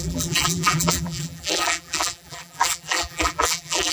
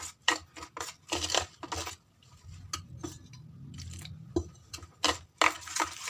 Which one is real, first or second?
second